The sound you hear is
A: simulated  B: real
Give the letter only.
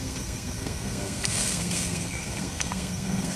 A